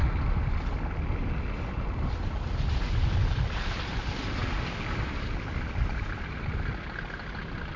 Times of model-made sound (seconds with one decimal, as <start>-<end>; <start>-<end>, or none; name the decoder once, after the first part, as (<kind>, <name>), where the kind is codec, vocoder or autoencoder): none